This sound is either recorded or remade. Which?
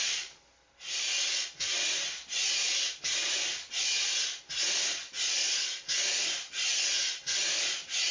recorded